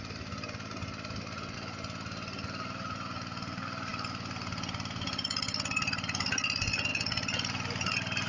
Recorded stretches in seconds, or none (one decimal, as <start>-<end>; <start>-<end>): 0.0-8.3